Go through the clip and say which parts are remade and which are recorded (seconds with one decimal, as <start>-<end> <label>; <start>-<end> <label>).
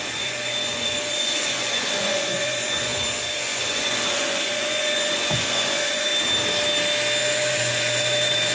0.0-6.1 remade; 6.1-7.2 recorded; 7.2-8.5 remade